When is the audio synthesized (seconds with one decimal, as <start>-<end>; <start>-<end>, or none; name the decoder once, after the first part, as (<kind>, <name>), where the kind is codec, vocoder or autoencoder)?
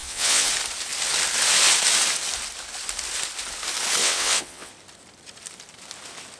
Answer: 0.0-0.5 (vocoder, WaveNeXt); 4.0-4.7